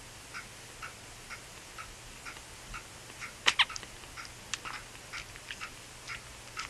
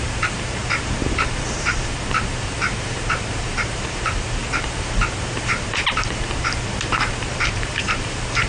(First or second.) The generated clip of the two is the second